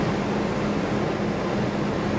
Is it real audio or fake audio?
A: real